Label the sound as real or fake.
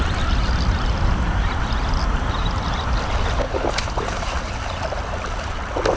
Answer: real